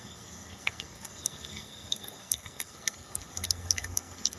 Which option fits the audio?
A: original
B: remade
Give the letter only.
B